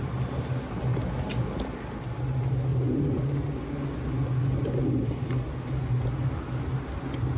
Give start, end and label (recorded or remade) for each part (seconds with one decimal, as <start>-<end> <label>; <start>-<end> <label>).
0.0-2.7 recorded; 2.7-3.3 remade; 3.3-7.4 recorded